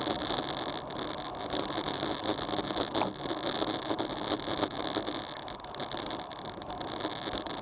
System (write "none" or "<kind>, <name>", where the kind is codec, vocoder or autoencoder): none